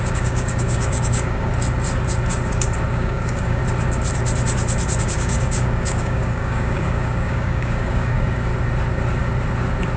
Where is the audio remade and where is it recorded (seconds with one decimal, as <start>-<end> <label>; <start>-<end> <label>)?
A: 0.0-1.5 remade; 1.5-2.9 recorded; 2.9-3.6 remade; 3.6-5.0 recorded; 5.0-8.5 remade; 8.5-10.0 recorded